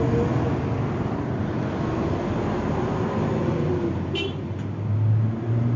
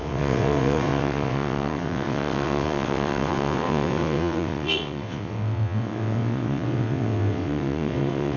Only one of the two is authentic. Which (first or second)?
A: first